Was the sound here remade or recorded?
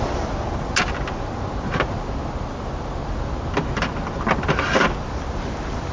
recorded